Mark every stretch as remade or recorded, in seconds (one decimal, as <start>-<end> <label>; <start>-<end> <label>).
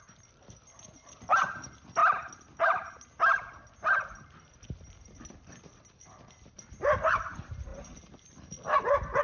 0.0-9.2 recorded